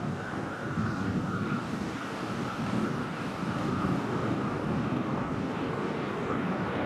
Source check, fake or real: fake